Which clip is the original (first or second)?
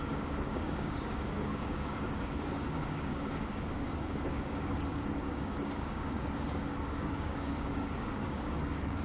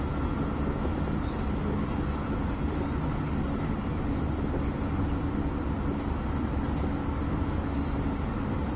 second